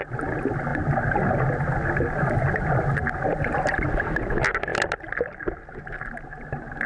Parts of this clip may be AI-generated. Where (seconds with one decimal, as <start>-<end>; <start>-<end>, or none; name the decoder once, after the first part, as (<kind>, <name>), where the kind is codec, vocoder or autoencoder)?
none